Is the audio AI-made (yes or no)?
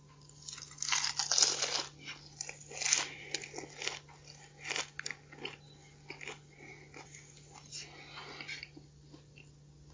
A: no